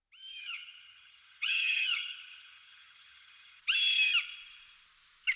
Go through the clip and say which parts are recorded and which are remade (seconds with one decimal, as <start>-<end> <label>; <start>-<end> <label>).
0.0-0.4 recorded; 0.4-3.6 remade; 3.6-5.4 recorded